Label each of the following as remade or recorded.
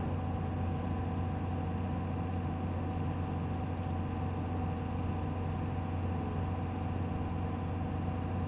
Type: recorded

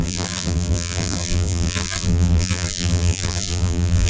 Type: remade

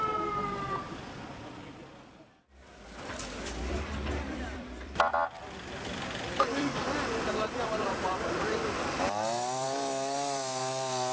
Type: remade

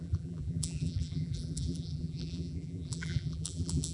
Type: remade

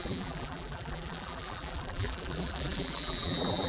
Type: remade